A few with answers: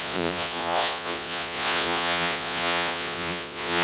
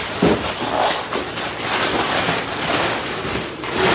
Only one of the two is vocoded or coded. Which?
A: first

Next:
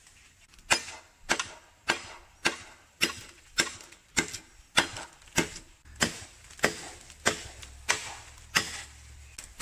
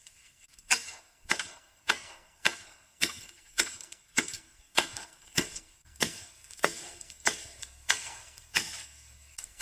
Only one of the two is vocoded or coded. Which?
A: second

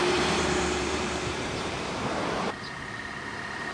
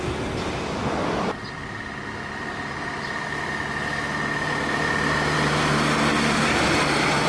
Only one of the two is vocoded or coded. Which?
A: first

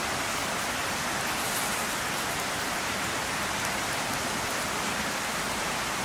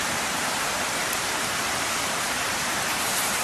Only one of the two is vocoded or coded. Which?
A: second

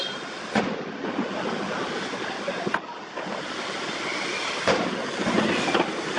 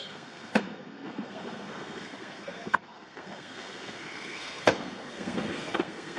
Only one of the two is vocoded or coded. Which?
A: second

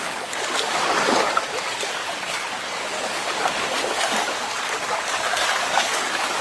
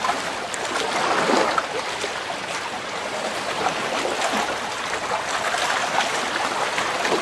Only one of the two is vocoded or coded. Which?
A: first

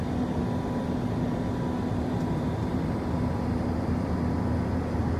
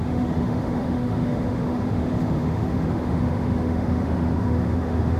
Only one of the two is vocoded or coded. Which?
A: second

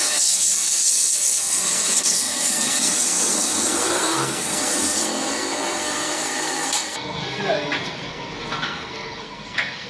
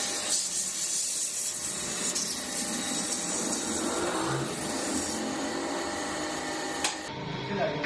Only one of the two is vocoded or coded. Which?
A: first